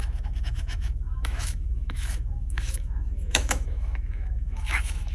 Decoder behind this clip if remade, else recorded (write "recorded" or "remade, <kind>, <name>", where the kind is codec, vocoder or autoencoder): remade, autoencoder, DAC-VAE